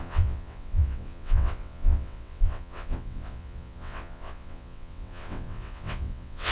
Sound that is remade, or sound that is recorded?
remade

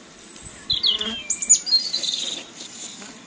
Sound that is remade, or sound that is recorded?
recorded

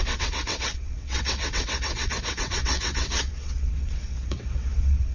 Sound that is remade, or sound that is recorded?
remade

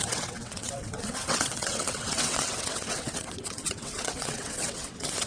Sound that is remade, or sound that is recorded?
remade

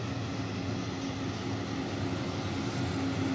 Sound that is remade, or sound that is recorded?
recorded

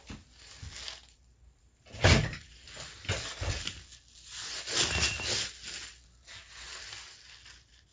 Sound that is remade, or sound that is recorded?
recorded